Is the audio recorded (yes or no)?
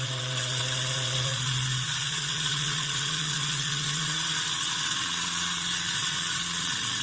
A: no